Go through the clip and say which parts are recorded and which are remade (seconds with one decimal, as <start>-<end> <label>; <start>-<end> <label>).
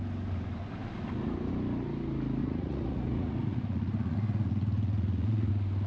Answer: 0.0-2.4 recorded; 2.4-5.5 remade; 5.5-5.9 recorded